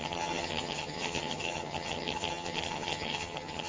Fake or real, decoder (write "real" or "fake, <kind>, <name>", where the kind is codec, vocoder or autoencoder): fake, vocoder, HiFi-GAN